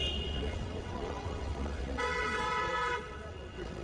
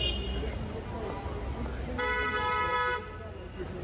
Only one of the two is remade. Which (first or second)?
first